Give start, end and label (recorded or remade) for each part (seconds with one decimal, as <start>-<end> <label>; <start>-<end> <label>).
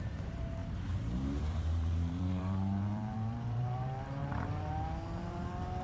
0.0-5.8 remade